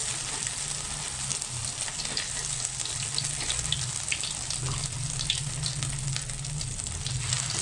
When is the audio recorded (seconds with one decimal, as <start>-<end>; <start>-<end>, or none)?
0.0-7.6